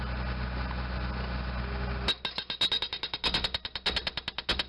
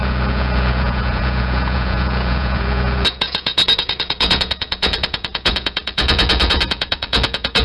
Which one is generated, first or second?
second